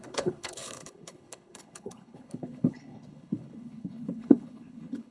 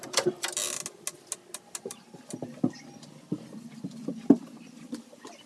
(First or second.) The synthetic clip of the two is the first